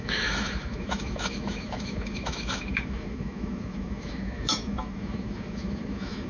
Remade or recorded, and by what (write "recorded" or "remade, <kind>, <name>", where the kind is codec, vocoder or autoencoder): remade, autoencoder, DAC-VAE